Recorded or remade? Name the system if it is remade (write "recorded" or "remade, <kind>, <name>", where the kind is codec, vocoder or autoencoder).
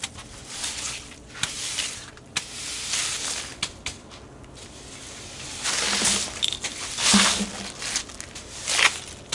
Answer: recorded